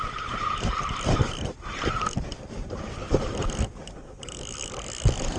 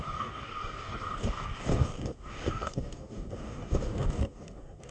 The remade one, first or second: second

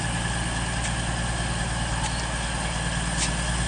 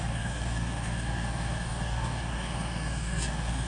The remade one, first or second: second